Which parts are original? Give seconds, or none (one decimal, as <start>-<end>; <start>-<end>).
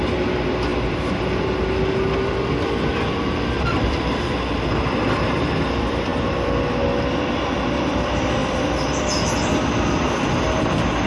0.0-0.7; 4.8-6.1; 6.9-8.4; 9.0-11.1